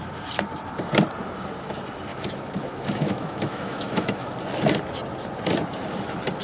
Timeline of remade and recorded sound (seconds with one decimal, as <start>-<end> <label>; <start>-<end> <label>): 0.0-2.1 recorded; 2.1-4.3 remade; 4.3-6.4 recorded